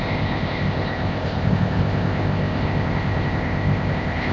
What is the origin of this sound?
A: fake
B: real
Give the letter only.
A